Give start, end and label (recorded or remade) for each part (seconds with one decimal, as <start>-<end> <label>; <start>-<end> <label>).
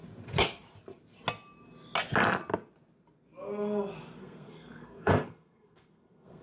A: 0.0-4.2 recorded; 4.2-6.4 remade